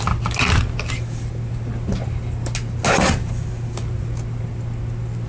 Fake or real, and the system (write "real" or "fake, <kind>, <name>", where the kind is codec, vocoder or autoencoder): real